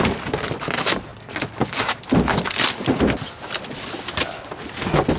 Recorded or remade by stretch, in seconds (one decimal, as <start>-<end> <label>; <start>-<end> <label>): 0.0-5.2 recorded